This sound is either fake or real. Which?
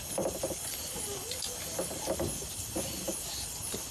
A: real